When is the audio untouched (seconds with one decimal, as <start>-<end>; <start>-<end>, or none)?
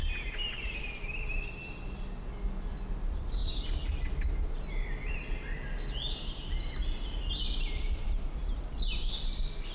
0.0-9.7